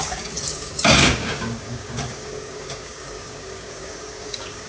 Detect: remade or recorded remade